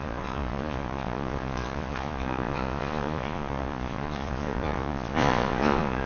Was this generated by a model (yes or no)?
yes